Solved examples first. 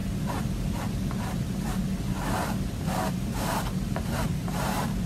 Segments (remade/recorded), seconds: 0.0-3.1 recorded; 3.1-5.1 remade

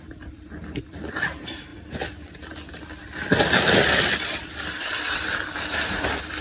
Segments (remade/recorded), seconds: 0.0-6.4 remade